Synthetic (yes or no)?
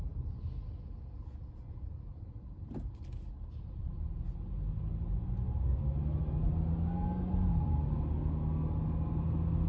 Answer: no